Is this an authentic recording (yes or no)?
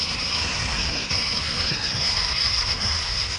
no